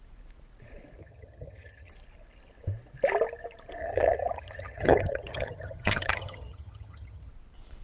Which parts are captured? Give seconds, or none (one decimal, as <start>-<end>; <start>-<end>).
0.0-1.0; 1.9-3.8; 7.3-7.8